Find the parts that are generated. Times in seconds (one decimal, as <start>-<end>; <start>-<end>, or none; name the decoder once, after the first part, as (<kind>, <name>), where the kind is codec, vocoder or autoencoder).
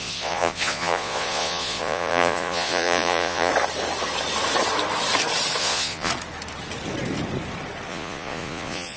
0.0-3.5 (vocoder, Vocos); 5.6-6.1; 7.9-9.0